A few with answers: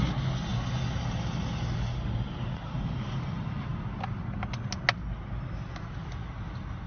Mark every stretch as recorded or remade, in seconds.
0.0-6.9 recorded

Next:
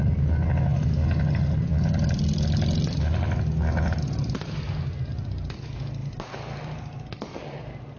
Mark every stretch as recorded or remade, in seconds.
0.0-8.0 recorded